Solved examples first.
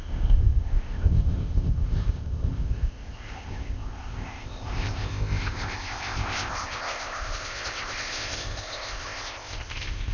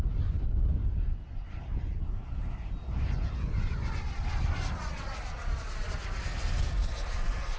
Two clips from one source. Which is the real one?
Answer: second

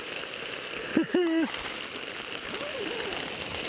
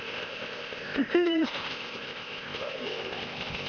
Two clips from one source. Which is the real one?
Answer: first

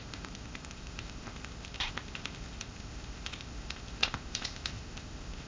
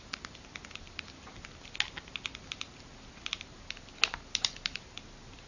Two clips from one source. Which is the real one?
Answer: second